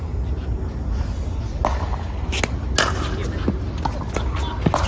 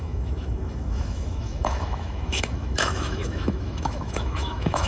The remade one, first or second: second